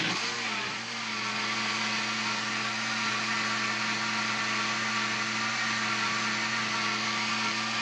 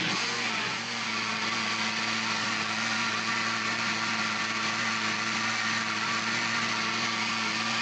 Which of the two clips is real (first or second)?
first